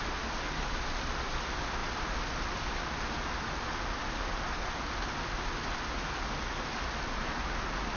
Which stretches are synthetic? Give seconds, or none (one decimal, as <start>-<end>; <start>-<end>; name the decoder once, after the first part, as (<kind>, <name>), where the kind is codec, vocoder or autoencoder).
none

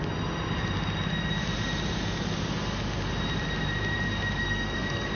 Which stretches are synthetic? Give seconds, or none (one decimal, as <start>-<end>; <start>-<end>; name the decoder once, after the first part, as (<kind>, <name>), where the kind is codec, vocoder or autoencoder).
4.4-5.1 (codec, SNAC)

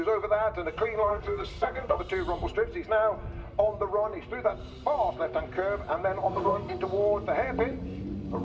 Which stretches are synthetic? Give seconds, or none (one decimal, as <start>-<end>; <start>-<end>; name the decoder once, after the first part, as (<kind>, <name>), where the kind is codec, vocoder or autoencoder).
1.1-2.0 (codec, SNAC); 6.3-6.8

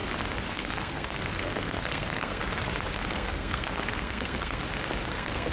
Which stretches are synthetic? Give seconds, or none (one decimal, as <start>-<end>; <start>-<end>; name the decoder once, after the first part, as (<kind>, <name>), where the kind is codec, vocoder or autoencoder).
0.5-2.4 (codec, SNAC); 3.1-4.6; 5.1-5.5

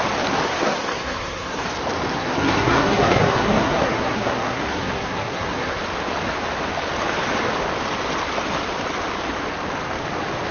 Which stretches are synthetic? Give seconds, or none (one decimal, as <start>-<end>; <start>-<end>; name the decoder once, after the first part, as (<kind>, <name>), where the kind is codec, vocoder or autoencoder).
0.5-1.6 (codec, SNAC); 2.1-5.8

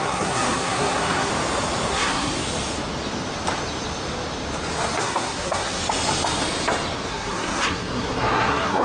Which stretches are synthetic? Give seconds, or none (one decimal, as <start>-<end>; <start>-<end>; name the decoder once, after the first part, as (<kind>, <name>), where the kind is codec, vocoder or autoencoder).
0.0-1.3 (codec, SNAC); 1.9-2.3; 5.0-5.8; 7.1-8.8